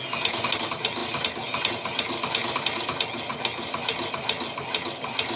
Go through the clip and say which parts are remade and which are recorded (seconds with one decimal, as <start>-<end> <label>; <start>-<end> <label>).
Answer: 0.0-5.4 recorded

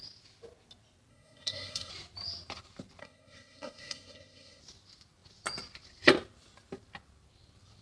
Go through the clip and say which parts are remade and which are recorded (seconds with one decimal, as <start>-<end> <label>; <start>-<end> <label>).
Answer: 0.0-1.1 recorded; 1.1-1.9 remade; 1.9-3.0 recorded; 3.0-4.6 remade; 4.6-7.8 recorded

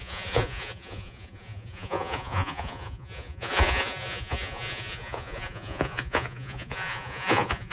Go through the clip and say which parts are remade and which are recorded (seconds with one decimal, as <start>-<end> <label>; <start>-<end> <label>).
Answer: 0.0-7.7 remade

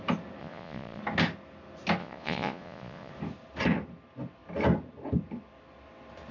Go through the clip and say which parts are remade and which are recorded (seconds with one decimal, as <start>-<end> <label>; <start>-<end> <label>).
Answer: 0.0-0.4 recorded; 0.4-1.0 remade; 1.0-2.0 recorded; 2.0-3.1 remade; 3.1-6.3 recorded